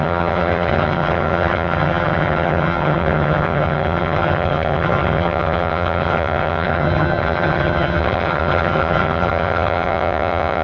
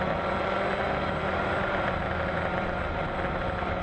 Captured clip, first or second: second